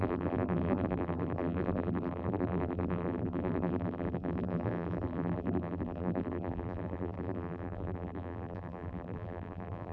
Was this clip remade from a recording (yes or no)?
yes